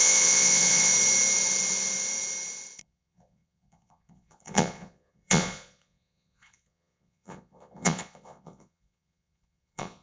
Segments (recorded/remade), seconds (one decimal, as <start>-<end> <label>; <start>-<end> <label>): 0.0-0.9 remade; 0.9-2.8 recorded; 2.8-10.0 remade